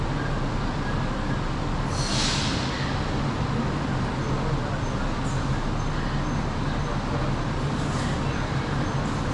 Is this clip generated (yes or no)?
no